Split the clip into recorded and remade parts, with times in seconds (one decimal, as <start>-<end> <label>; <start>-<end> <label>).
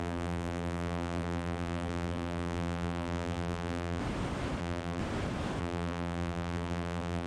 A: 0.0-4.0 remade; 4.0-4.6 recorded; 4.6-5.0 remade; 5.0-5.6 recorded; 5.6-7.3 remade